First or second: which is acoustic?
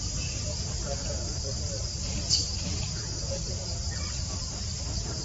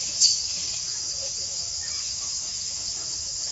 first